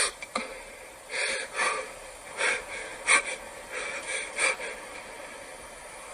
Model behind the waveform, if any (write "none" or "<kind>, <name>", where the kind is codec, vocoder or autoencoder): none